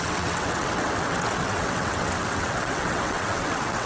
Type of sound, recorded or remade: remade